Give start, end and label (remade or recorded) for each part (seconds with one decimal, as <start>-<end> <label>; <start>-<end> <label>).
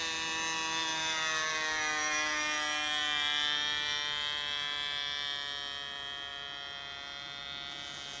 0.0-8.2 recorded